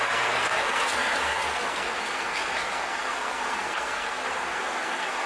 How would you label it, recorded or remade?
remade